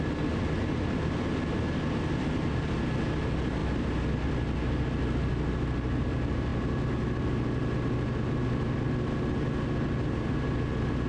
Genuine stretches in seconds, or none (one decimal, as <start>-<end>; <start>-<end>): 0.0-11.1